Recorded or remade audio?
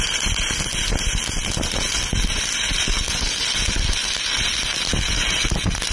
recorded